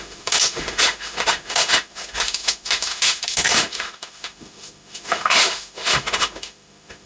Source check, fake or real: fake